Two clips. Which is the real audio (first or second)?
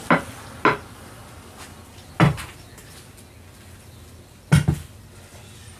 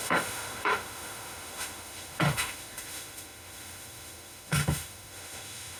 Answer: first